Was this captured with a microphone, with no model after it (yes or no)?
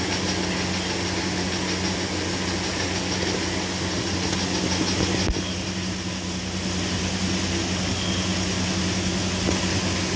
yes